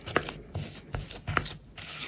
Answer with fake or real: real